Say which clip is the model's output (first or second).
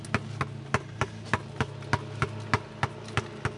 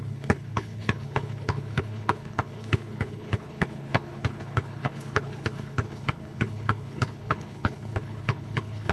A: second